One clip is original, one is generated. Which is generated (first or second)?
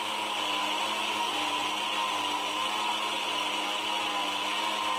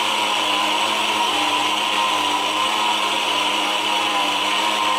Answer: second